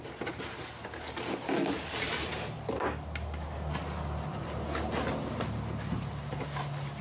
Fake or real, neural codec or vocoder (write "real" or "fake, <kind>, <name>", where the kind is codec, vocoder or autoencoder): real